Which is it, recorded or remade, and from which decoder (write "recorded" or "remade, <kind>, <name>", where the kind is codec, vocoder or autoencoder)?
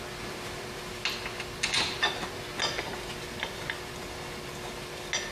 recorded